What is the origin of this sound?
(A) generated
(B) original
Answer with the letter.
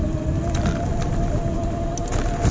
B